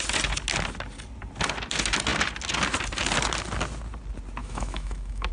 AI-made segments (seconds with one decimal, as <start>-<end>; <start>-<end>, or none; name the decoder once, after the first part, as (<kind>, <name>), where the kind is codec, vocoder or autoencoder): 4.4-5.3 (autoencoder, DAC-VAE)